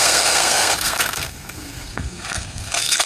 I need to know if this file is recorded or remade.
remade